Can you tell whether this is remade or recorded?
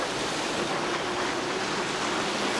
recorded